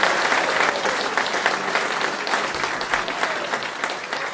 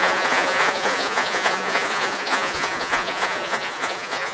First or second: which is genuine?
first